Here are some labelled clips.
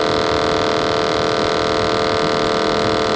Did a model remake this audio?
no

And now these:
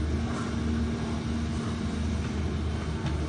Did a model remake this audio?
no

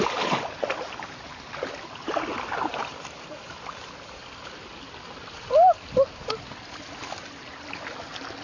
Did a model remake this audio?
no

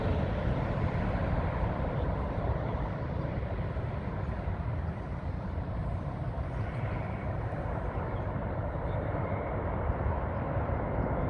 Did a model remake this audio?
yes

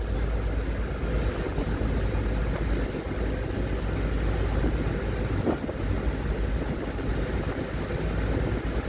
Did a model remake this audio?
no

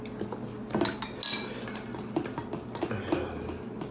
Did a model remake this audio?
no